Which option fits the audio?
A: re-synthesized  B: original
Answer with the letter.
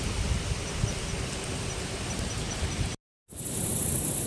B